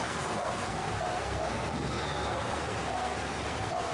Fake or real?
fake